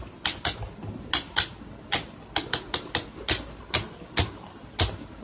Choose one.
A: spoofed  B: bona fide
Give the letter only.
B